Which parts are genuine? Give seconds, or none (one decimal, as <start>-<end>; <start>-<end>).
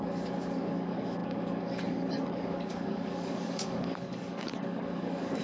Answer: none